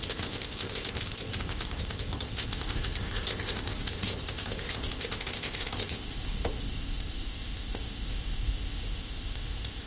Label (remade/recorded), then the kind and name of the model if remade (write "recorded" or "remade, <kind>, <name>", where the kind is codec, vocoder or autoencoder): remade, codec, ZipCodec